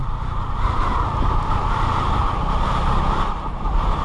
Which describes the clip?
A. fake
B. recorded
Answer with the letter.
B